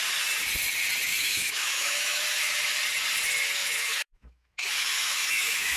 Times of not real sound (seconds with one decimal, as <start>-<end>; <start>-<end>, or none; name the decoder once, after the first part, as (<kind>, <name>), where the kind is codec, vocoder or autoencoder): 1.1-2.5 (autoencoder, DAC-VAE); 3.6-5.8

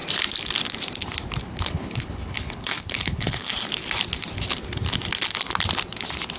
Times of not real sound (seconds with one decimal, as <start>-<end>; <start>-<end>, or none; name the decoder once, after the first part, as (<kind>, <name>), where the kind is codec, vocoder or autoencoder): 1.4-3.5 (codec, HILCodec)

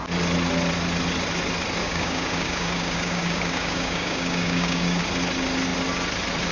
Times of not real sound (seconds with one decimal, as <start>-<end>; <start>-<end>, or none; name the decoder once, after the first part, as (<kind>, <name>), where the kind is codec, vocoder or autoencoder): 1.8-5.0 (codec, DAC)

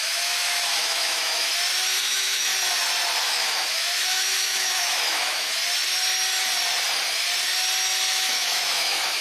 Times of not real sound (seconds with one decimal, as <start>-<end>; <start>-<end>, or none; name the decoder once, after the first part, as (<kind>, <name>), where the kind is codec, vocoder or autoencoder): 0.0-1.5 (autoencoder, DAC-VAE); 2.0-2.5; 3.2-5.6; 8.1-9.2

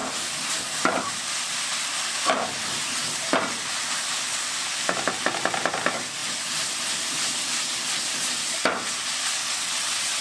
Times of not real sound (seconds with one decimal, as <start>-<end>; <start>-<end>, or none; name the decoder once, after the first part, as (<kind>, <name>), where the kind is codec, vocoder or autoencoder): 9.4-10.2 (vocoder, WaveNeXt)

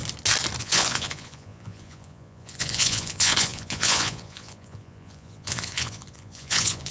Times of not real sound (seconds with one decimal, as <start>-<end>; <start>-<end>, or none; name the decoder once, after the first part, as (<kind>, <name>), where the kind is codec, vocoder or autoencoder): 0.6-6.9 (vocoder, Vocos)

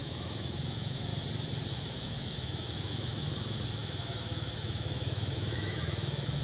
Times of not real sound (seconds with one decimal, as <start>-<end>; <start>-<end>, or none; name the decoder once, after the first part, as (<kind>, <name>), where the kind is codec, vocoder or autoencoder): 0.0-1.1 (autoencoder, DAC-VAE); 1.7-6.4

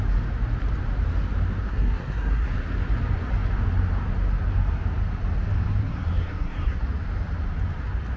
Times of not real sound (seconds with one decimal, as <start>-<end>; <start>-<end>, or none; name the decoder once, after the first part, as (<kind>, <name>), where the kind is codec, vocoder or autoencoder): 1.7-2.5 (codec, SNAC); 5.8-6.8